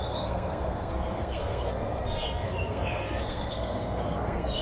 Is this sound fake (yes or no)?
yes